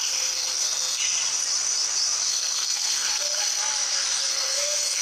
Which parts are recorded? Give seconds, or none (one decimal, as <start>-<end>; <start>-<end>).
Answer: 1.0-2.3; 3.6-4.3